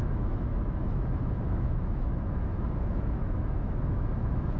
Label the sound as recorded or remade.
remade